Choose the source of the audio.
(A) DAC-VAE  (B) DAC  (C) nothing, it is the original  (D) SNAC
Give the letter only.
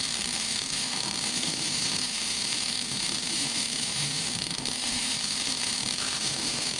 A